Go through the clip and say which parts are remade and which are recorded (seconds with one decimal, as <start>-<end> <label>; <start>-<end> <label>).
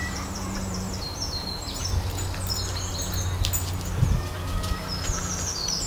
0.0-1.9 remade; 1.9-5.9 recorded